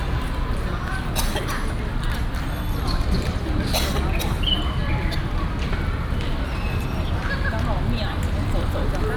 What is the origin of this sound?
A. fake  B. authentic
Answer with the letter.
B